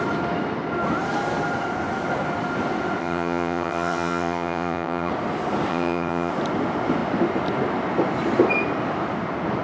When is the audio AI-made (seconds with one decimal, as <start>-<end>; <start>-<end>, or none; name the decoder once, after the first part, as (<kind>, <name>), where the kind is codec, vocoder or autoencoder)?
3.0-5.1 (vocoder, HiFi-GAN); 5.7-6.3